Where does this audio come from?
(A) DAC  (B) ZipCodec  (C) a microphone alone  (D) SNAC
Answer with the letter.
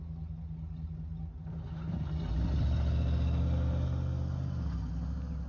C